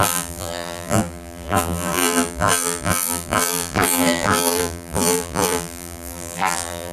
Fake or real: fake